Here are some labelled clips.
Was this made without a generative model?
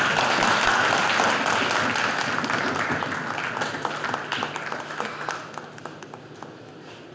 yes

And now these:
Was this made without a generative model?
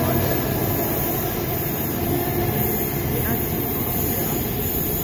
yes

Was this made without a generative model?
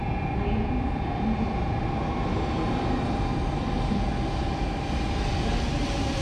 yes